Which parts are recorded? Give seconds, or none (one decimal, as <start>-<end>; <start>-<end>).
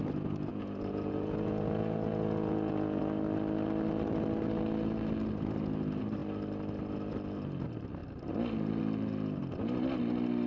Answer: 0.0-0.5; 3.0-10.5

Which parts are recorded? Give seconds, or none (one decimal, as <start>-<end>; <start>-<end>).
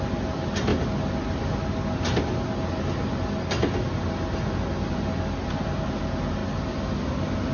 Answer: 0.0-7.5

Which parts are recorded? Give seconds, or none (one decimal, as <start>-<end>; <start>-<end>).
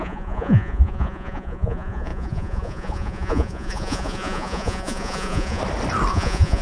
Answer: 5.6-6.1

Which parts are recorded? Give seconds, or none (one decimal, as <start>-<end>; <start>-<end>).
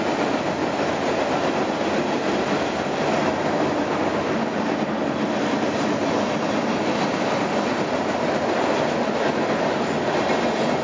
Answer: 0.0-10.8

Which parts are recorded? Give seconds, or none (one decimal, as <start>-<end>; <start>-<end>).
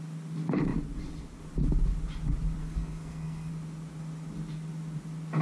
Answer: 0.0-2.6; 3.5-5.4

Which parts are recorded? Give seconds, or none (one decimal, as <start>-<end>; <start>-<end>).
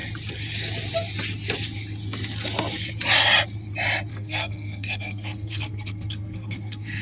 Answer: 0.0-4.1